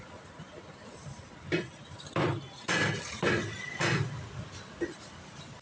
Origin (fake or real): fake